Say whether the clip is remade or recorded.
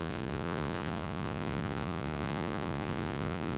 remade